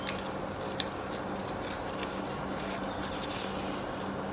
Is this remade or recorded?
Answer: recorded